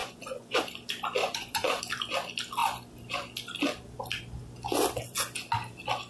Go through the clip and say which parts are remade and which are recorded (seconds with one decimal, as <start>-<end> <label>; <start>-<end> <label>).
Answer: 0.0-0.6 remade; 0.6-1.2 recorded; 1.2-1.8 remade; 1.8-6.1 recorded